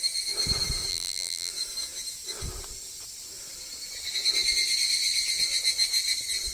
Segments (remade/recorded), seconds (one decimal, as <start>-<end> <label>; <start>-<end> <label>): 0.0-0.9 recorded; 0.9-1.5 remade; 1.5-6.5 recorded